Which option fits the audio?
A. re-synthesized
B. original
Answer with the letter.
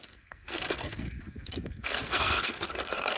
A